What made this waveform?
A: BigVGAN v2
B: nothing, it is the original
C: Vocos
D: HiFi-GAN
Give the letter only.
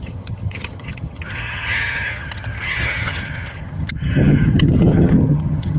D